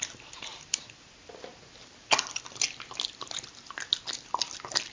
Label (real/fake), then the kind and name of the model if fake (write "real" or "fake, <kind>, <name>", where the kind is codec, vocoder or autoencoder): real